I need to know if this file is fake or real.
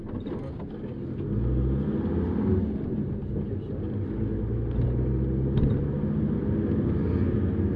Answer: real